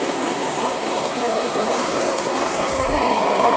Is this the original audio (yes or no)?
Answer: no